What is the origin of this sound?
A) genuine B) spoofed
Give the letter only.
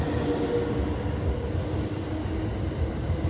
A